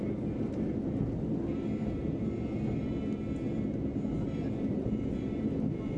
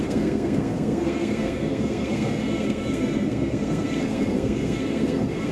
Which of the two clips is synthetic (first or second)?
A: second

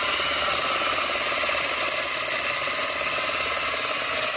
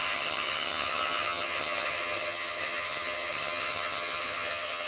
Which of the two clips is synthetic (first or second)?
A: second